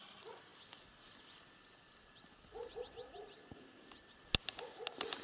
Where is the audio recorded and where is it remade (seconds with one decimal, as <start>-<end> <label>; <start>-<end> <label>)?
0.0-5.2 recorded